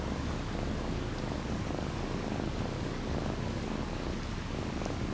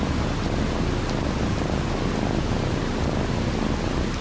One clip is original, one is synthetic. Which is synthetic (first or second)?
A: first